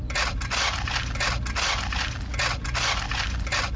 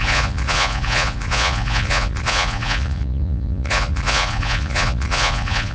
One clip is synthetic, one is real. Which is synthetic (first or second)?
second